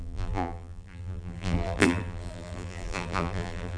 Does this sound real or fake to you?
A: fake